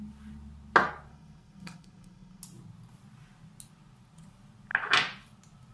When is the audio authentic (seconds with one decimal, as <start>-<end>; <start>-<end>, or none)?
0.0-1.1; 2.4-5.7